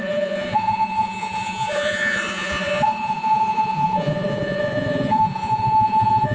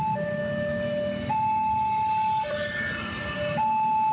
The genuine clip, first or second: second